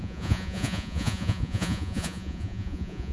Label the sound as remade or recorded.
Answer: remade